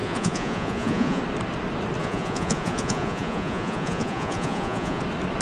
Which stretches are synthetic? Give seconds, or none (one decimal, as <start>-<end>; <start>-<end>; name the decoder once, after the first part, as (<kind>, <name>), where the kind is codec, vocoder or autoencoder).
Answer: 0.0-1.2 (vocoder, Vocos); 2.0-5.0